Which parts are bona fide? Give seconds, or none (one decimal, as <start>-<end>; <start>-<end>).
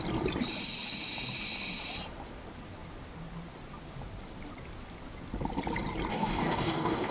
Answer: 0.0-6.1